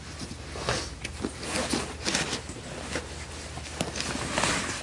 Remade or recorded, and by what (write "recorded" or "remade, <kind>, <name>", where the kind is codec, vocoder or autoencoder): recorded